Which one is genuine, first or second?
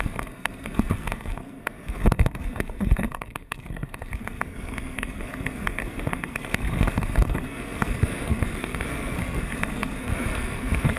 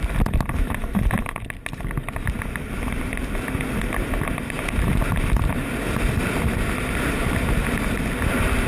second